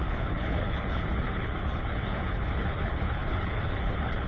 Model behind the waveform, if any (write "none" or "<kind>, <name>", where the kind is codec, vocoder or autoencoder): codec, HILCodec